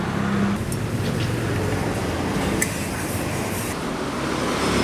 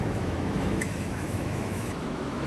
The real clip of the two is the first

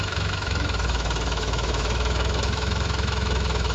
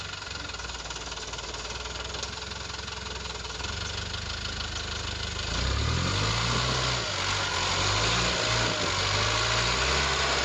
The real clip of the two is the second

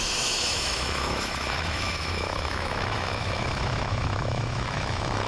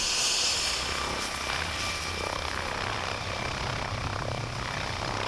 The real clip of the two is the second